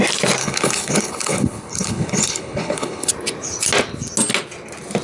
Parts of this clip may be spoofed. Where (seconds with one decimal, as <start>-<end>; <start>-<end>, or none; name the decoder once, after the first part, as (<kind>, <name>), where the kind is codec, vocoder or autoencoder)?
0.4-3.1 (codec, HILCodec)